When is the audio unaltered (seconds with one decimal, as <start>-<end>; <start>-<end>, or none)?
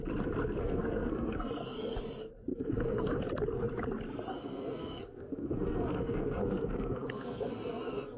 0.0-0.6; 1.5-2.5; 3.1-4.3